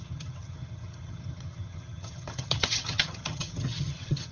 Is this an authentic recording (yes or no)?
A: no